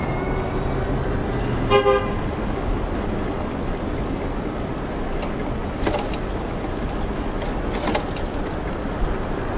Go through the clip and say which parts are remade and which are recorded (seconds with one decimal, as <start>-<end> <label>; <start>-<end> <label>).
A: 0.0-9.6 recorded